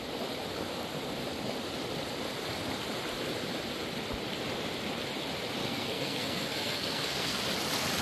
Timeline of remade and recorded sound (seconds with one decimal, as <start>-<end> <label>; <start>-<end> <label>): 0.0-5.6 recorded; 5.6-7.4 remade; 7.4-8.0 recorded